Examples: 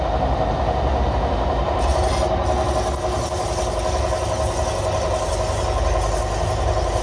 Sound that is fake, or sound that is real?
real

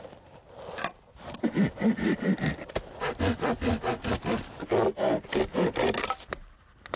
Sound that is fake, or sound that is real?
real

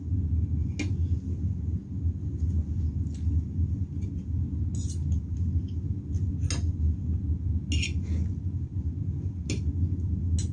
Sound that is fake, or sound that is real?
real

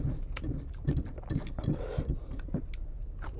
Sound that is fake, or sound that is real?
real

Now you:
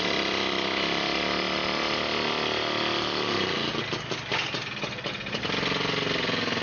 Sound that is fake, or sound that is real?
real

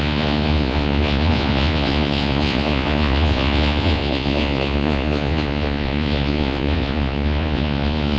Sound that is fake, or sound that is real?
fake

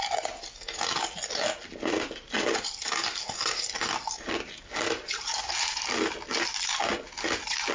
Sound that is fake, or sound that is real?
real